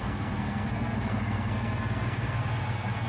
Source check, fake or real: fake